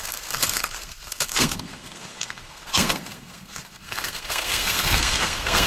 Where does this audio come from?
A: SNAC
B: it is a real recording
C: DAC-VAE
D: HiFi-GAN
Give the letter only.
A